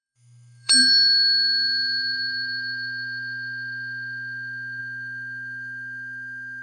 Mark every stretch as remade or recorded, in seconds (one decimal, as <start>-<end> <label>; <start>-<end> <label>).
0.0-6.6 remade

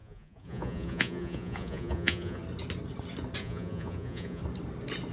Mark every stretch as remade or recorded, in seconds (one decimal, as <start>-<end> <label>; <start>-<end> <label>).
0.0-2.4 remade; 2.4-3.4 recorded; 3.4-4.4 remade; 4.4-5.1 recorded

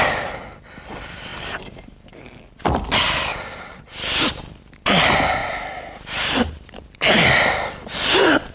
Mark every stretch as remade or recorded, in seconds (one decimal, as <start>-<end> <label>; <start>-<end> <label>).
0.0-1.3 recorded; 1.3-2.6 remade; 2.6-3.3 recorded; 3.3-4.6 remade; 4.6-5.4 recorded; 5.4-6.8 remade; 6.8-8.5 recorded